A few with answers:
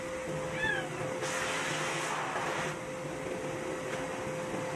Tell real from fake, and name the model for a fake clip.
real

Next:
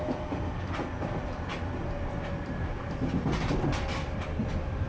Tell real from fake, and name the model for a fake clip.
fake, vocoder, BigVGAN v2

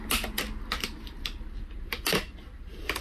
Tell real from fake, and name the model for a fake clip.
real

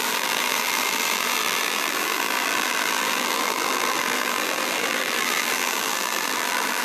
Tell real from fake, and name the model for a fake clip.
fake, vocoder, BigVGAN v2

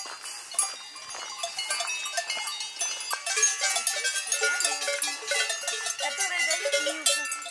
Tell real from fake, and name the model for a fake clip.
real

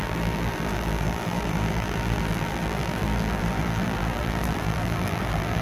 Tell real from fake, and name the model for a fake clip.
fake, vocoder, BigVGAN v2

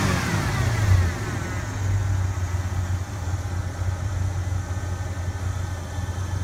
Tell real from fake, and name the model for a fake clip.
real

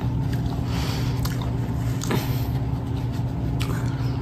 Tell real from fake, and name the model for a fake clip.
real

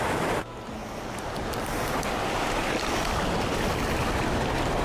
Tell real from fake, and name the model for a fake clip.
real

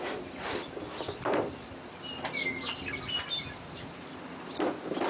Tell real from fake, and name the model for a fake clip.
real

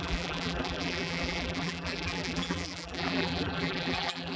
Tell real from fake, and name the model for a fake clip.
fake, vocoder, BigVGAN v2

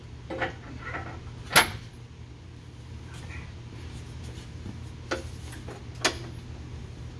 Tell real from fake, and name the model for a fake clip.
real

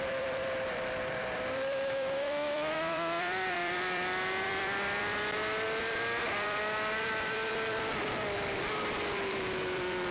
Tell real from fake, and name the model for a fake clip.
fake, vocoder, BigVGAN v2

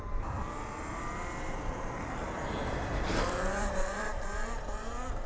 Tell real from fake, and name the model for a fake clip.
fake, vocoder, BigVGAN v2